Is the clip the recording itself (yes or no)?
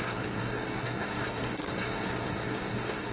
no